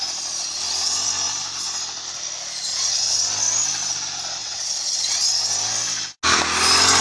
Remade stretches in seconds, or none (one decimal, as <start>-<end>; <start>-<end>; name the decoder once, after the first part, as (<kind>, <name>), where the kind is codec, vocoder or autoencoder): 2.7-3.2 (vocoder, WaveNeXt); 4.4-5.2